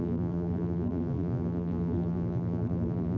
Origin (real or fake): fake